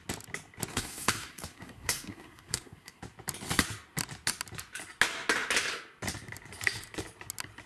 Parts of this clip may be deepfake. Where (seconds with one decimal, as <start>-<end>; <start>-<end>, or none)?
0.7-3.0